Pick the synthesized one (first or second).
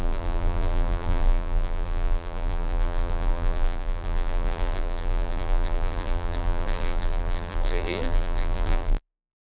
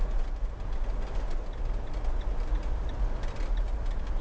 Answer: first